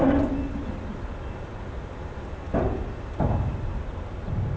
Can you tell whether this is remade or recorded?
recorded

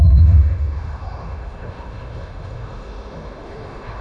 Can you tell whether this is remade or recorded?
remade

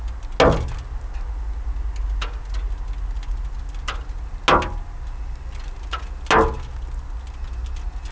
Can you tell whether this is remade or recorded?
recorded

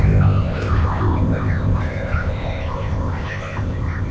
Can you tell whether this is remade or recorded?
remade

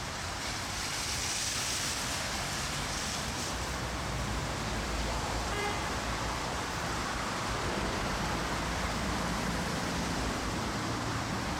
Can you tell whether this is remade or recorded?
remade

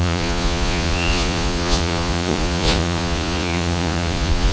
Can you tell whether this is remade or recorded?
remade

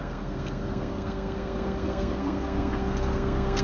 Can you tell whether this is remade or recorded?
remade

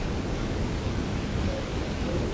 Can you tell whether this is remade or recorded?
remade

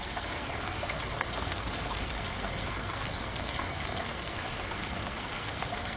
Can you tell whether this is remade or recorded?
remade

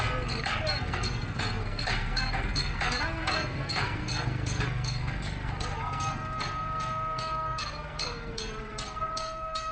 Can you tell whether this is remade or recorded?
remade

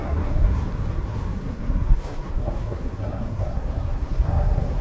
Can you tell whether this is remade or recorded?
remade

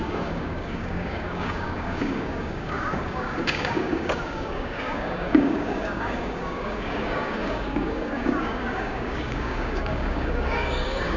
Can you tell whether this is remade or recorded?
remade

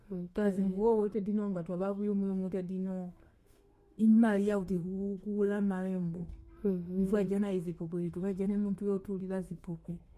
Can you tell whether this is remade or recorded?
remade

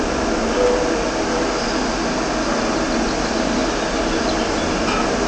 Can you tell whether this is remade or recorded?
recorded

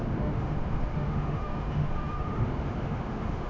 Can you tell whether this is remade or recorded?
remade